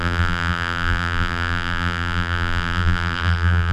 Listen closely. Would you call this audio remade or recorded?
remade